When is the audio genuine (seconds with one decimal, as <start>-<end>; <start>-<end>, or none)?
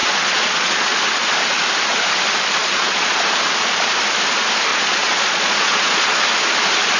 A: 1.0-2.6; 3.2-4.7; 6.2-7.0